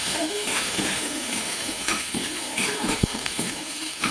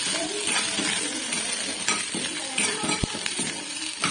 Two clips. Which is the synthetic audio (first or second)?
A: first